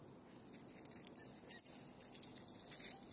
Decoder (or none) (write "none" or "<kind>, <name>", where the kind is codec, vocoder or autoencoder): none